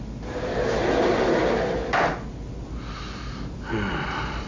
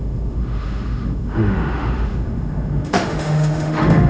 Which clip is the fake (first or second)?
second